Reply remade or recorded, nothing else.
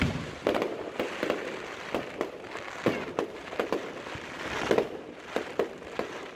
recorded